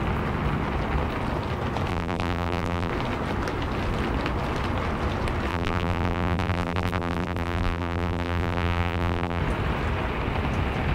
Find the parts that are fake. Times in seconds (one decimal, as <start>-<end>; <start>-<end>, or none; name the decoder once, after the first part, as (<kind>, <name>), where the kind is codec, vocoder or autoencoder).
1.9-2.9 (vocoder, BigVGAN v2); 5.5-9.4